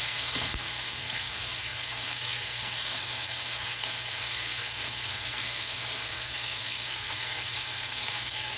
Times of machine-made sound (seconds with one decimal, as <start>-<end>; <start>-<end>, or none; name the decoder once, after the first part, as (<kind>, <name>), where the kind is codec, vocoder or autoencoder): 0.0-8.6 (codec, SNAC)